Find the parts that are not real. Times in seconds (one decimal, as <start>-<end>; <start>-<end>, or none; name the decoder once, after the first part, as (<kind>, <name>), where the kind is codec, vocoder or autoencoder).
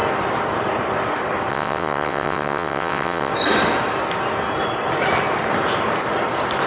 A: 1.5-3.3 (vocoder, WaveNeXt)